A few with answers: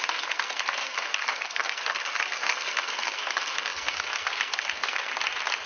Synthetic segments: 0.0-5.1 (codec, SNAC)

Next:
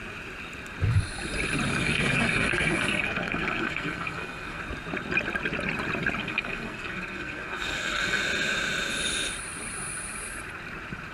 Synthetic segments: 1.7-4.6 (codec, SNAC); 6.2-8.2

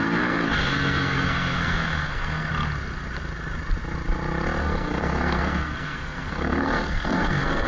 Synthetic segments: 0.0-2.5 (codec, SNAC); 4.6-7.7

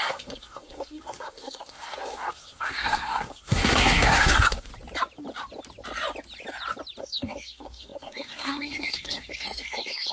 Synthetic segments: 0.0-4.7 (codec, SNAC); 7.0-10.1

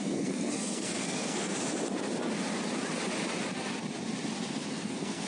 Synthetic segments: 0.0-1.5 (codec, SNAC); 4.7-5.3